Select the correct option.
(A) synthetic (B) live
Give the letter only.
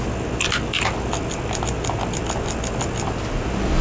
B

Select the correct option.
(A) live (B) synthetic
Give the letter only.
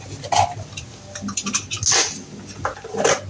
A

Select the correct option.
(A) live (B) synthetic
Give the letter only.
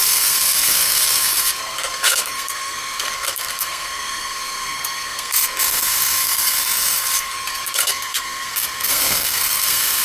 B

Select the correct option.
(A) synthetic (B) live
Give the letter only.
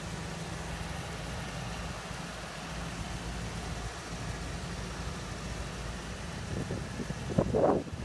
B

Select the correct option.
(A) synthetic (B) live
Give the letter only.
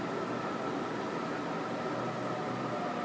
B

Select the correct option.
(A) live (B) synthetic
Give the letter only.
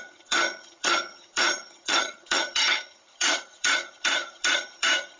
B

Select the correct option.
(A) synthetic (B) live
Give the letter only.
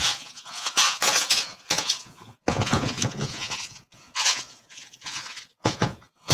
A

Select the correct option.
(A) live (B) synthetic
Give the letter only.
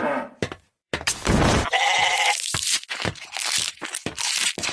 B